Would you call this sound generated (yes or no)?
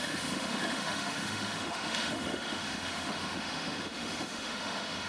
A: yes